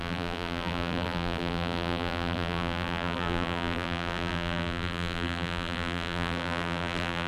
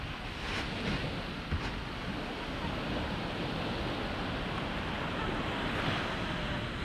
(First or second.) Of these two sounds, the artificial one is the first